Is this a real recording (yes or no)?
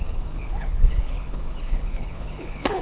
no